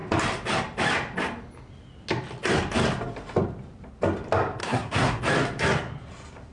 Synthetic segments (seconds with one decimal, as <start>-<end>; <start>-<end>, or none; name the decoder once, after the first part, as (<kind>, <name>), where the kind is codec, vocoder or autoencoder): 4.6-5.2 (codec, SNAC)

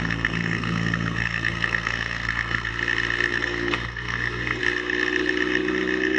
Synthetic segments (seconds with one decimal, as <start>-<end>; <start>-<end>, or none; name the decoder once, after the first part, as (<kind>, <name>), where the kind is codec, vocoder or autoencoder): 0.0-2.7 (codec, SNAC); 3.3-4.6